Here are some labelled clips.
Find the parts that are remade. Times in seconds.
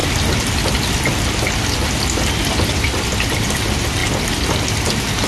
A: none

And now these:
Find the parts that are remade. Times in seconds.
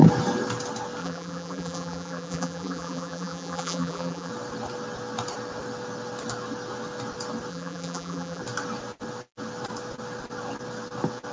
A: 1.0-4.3; 7.5-8.4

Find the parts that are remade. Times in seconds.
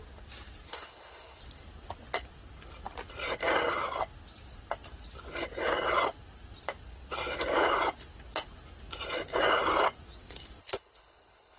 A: 0.7-1.4; 10.6-11.6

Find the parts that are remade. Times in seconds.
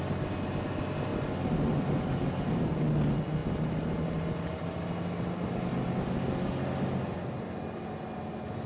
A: none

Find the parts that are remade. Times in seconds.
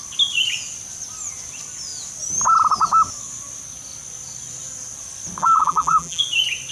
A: 5.4-6.2